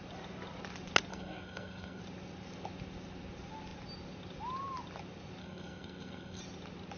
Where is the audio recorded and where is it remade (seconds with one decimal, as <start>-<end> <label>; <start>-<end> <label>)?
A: 0.0-1.1 recorded; 1.1-2.0 remade; 2.0-5.4 recorded; 5.4-6.4 remade; 6.4-7.0 recorded